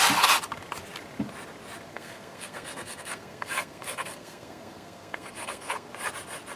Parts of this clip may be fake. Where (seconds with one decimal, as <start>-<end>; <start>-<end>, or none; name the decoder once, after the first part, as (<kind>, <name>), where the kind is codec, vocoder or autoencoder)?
1.9-5.9 (codec, SNAC)